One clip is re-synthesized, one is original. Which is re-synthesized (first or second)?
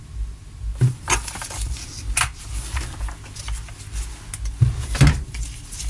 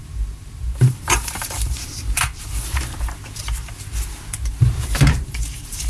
second